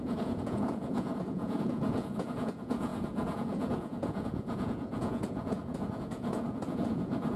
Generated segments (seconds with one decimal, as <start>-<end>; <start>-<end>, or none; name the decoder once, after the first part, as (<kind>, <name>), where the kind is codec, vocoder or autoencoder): 0.0-7.4 (vocoder, Vocos)